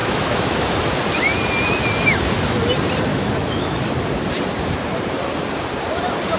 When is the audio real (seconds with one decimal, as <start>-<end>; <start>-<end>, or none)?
1.0-3.1; 4.0-6.4